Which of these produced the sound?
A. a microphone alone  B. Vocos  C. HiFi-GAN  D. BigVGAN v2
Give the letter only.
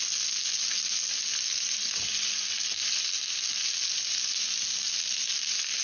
A